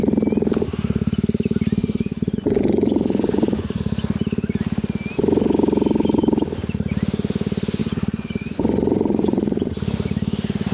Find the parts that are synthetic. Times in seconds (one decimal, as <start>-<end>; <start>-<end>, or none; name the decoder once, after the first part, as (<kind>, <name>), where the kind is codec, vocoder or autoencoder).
1.8-3.8 (vocoder, Vocos); 7.8-9.7